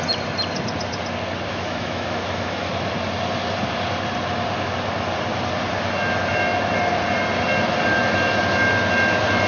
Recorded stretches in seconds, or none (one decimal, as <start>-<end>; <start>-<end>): 0.0-1.5; 2.7-9.5